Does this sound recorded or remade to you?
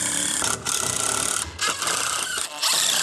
recorded